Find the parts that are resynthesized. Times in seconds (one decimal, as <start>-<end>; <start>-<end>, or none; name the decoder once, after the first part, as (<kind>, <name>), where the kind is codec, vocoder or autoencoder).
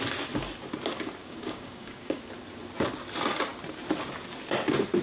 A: 1.2-2.2 (codec, DAC)